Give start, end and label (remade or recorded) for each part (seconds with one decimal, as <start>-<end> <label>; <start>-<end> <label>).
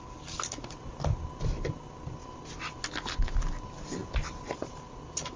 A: 0.0-5.4 recorded